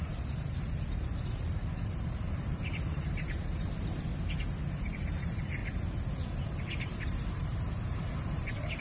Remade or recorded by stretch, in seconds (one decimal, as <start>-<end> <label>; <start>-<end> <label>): 0.0-4.1 remade; 4.1-4.8 recorded; 4.8-5.6 remade; 5.6-6.4 recorded; 6.4-8.8 remade